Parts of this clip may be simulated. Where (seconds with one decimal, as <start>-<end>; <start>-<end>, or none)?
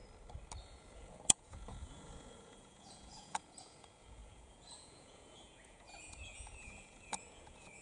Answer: 0.6-7.8